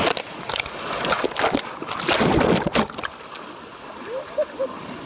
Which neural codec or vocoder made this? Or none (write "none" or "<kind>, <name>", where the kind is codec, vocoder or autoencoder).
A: none